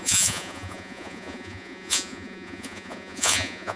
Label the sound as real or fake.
fake